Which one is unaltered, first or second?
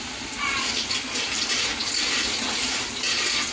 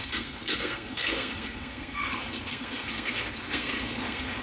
first